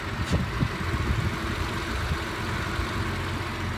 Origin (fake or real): real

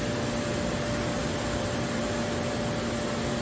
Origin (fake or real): real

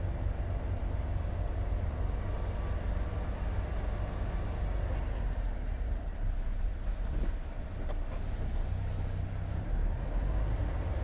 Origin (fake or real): real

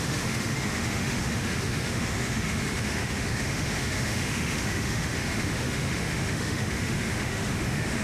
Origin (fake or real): fake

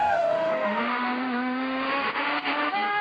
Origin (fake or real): fake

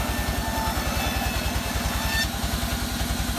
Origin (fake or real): real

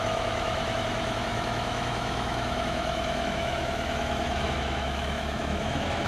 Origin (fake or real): fake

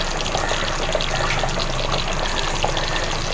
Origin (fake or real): real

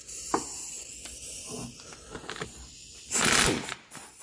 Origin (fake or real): real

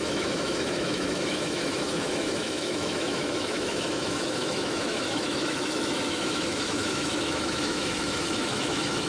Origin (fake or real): fake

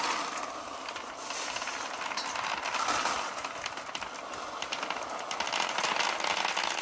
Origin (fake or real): real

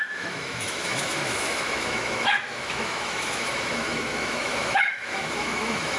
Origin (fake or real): fake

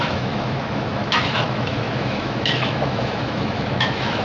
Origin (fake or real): fake